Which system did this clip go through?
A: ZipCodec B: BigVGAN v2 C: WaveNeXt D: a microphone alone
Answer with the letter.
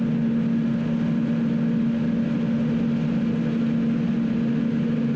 D